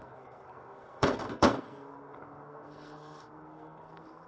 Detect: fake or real fake